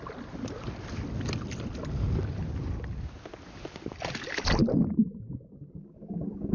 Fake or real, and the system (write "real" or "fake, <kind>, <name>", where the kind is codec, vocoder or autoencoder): real